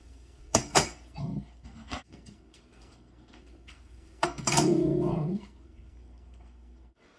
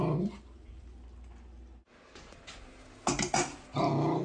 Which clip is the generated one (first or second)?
first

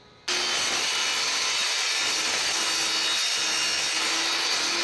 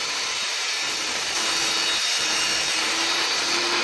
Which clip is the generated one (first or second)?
second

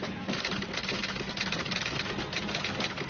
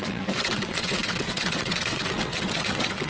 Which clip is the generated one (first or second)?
second